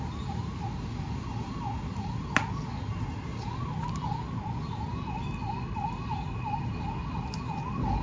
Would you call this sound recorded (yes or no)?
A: yes